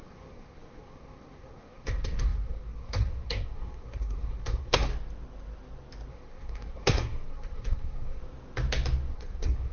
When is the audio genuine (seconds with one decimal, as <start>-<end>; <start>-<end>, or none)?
4.9-6.1; 8.2-9.1